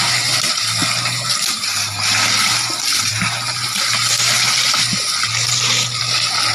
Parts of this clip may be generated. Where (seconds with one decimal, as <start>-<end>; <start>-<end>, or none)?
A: none